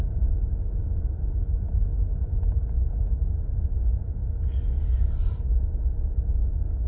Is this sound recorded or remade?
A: recorded